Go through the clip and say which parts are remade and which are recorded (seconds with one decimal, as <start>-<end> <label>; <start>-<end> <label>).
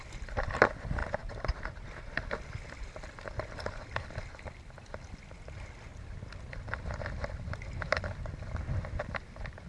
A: 0.0-9.7 recorded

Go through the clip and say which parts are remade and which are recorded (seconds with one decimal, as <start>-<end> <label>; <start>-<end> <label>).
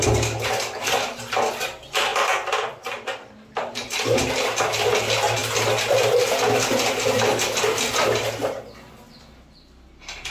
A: 0.0-10.3 recorded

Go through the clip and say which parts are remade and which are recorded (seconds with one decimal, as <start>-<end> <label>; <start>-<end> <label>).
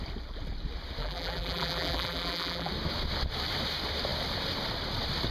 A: 0.0-1.0 recorded; 1.0-2.7 remade; 2.7-5.3 recorded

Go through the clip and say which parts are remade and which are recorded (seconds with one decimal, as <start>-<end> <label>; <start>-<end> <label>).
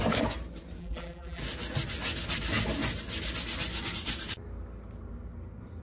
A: 0.0-0.8 recorded; 0.8-1.4 remade; 1.4-5.8 recorded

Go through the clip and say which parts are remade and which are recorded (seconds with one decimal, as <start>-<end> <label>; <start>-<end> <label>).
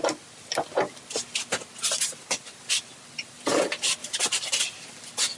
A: 0.0-2.9 recorded; 2.9-3.6 remade; 3.6-4.0 recorded; 4.0-4.6 remade; 4.6-5.4 recorded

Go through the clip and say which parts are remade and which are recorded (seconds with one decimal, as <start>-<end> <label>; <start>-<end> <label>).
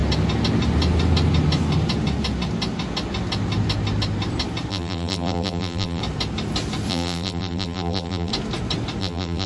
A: 0.0-4.7 recorded; 4.7-6.0 remade; 6.0-6.9 recorded; 6.9-8.3 remade; 8.3-9.0 recorded; 9.0-9.5 remade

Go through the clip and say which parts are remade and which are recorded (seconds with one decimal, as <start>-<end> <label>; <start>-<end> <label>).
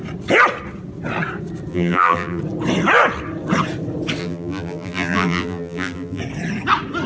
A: 0.0-1.7 recorded; 1.7-2.4 remade; 2.4-4.2 recorded; 4.2-6.2 remade; 6.2-7.1 recorded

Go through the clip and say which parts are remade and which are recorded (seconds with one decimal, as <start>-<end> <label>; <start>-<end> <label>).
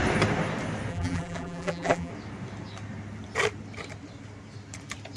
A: 0.0-0.9 recorded; 0.9-2.1 remade; 2.1-5.2 recorded